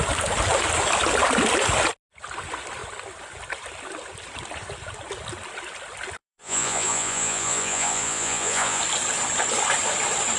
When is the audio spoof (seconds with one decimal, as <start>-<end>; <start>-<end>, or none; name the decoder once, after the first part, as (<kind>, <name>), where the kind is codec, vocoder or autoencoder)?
6.2-8.8 (vocoder, Vocos)